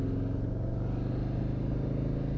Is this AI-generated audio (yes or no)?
no